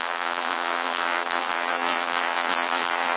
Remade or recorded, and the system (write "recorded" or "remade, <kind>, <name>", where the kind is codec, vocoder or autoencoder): remade, vocoder, BigVGAN v2